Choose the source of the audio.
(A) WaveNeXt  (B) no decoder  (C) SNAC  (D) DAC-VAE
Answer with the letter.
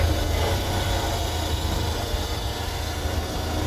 B